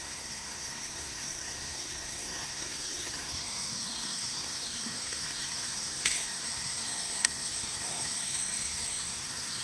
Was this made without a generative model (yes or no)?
no